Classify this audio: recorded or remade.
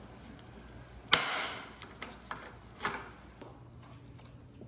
recorded